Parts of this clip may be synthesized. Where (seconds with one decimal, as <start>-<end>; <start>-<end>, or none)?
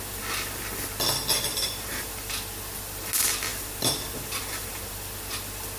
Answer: 1.5-2.1; 3.5-4.8